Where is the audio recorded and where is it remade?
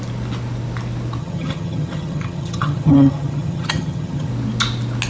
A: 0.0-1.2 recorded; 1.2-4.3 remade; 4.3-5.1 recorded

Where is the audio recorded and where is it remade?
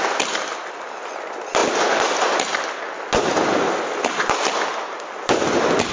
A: 0.0-5.9 recorded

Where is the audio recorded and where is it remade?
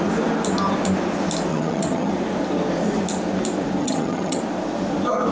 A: 0.0-1.5 recorded; 1.5-2.1 remade; 2.1-3.8 recorded; 3.8-4.4 remade; 4.4-5.3 recorded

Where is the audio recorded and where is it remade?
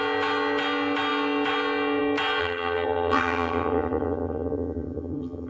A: 0.0-2.4 recorded; 2.4-5.5 remade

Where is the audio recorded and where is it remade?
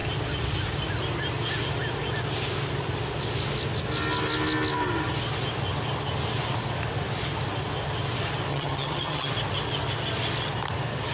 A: 0.0-8.5 recorded; 8.5-9.3 remade; 9.3-11.1 recorded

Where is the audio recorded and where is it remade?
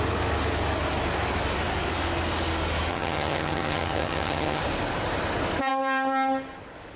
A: 0.0-2.9 recorded; 2.9-4.6 remade; 4.6-7.0 recorded